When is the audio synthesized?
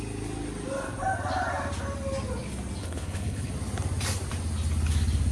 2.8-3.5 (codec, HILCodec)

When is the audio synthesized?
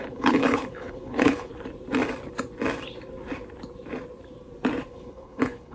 0.0-1.5 (codec, HILCodec); 4.9-5.7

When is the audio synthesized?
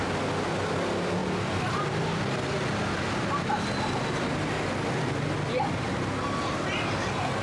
none